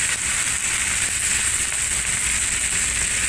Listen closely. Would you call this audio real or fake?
real